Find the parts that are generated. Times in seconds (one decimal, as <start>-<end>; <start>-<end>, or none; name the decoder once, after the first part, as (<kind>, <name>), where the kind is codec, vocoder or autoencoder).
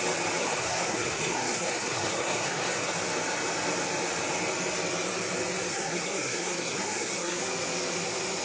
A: 0.4-2.9 (codec, SNAC); 5.7-7.4